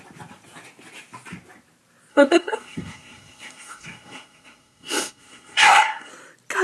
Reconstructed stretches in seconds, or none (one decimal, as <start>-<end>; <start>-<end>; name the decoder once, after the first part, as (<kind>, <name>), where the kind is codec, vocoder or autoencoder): 2.1-6.1 (codec, SNAC)